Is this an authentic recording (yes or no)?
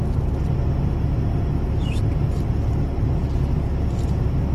yes